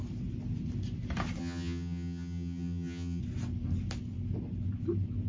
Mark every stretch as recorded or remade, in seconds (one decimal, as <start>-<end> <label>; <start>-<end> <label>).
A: 0.0-1.4 recorded; 1.4-3.2 remade; 3.2-5.3 recorded